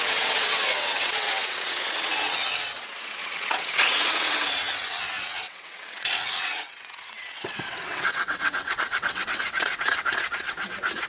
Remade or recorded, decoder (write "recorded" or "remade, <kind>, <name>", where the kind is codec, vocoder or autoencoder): remade, vocoder, WaveNeXt